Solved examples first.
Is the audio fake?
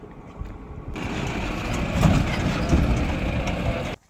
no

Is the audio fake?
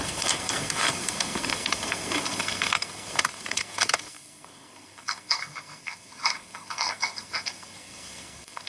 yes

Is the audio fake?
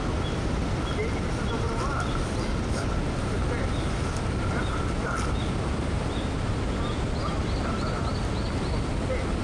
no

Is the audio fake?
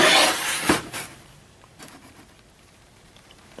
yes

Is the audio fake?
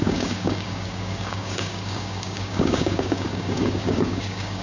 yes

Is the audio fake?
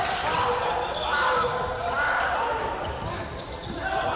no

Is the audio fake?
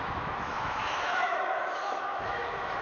yes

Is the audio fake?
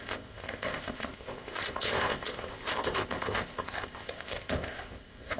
yes